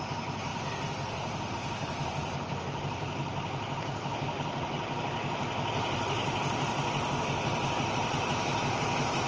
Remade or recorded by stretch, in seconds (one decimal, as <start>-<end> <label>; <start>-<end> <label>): 0.0-0.5 remade; 0.5-1.5 recorded; 1.5-2.0 remade; 2.0-2.8 recorded; 2.8-3.2 remade; 3.2-7.8 recorded; 7.8-9.3 remade